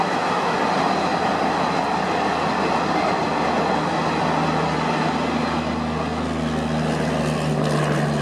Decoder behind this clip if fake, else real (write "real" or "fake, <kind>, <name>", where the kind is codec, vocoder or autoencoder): real